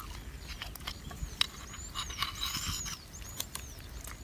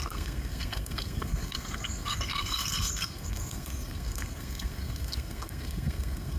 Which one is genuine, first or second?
first